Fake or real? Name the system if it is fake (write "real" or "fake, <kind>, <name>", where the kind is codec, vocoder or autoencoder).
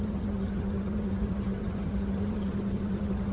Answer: fake, vocoder, HiFi-GAN